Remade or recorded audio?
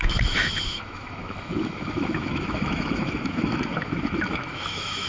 remade